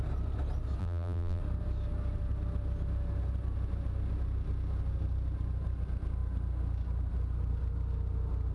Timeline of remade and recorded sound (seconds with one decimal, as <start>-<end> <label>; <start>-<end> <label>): 0.0-0.8 recorded; 0.8-1.4 remade; 1.4-8.5 recorded